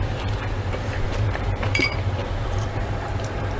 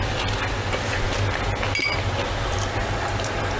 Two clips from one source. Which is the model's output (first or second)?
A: first